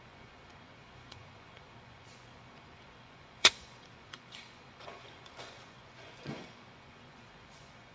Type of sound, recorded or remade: remade